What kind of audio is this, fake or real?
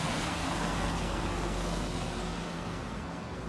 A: fake